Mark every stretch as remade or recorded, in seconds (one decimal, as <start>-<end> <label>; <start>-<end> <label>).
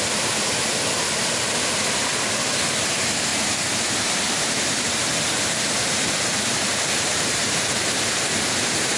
0.0-3.3 recorded; 3.3-4.6 remade; 4.6-5.1 recorded; 5.1-9.0 remade